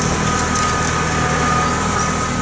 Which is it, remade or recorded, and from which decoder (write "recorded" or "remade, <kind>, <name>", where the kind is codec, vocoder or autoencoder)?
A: recorded